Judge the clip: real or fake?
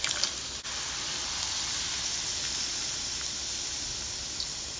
real